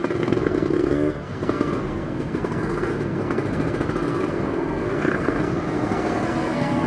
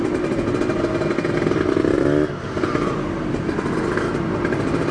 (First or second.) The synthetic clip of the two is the first